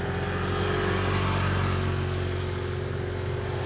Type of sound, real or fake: real